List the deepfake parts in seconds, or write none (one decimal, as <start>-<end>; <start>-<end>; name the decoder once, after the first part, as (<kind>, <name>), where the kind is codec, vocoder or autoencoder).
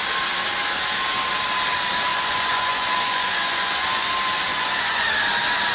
2.1-4.1 (vocoder, Vocos); 4.5-5.1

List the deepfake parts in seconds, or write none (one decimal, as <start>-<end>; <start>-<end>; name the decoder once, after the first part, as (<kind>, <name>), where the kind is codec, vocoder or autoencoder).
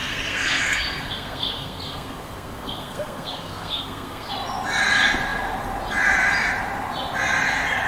0.0-4.3 (codec, SNAC)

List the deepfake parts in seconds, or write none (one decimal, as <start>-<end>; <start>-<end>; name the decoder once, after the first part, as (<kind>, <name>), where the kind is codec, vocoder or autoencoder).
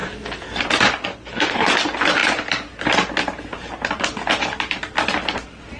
0.0-0.6 (codec, SNAC); 1.0-1.7